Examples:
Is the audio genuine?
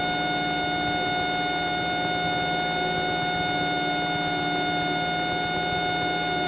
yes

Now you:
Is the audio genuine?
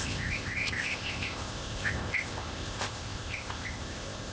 no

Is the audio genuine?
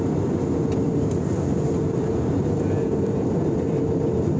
no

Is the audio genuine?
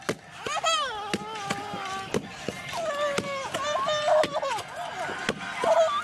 yes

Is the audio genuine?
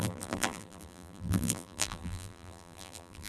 no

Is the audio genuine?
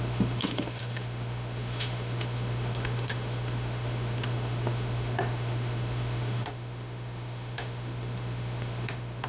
no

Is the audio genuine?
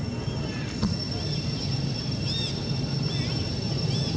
yes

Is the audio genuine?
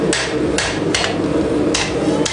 yes